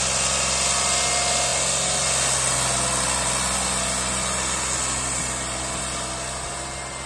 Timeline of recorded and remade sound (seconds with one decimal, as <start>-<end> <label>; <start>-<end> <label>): 0.0-7.1 recorded